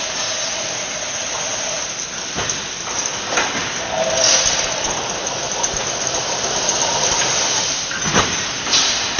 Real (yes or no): yes